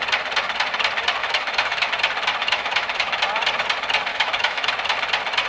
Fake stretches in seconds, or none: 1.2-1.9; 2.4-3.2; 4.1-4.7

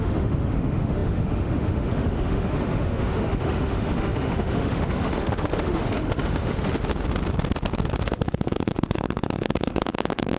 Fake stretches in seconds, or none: 0.0-6.9; 7.9-10.4

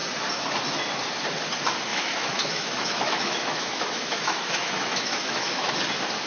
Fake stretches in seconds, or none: 1.9-5.7

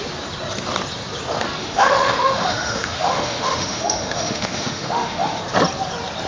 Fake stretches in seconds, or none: 1.6-5.4

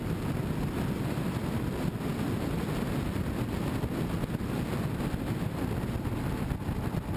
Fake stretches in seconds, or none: none

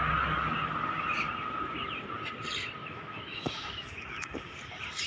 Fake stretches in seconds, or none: 2.8-4.5

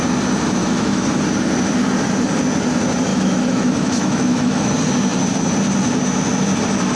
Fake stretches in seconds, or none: 0.6-1.2; 3.1-4.7

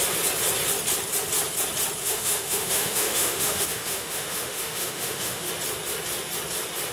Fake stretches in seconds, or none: 2.0-5.5